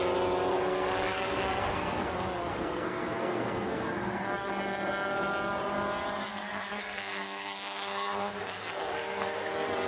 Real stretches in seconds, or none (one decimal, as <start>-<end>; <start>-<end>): 0.0-0.5; 2.1-2.5; 4.5-6.3; 9.5-9.9